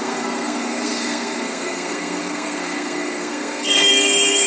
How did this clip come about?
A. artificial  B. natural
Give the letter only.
A